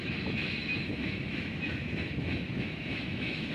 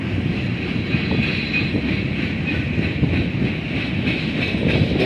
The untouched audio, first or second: second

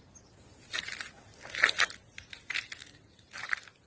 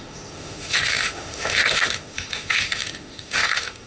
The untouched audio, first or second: first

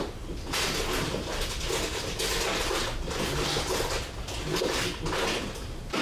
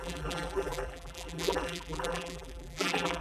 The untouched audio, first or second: first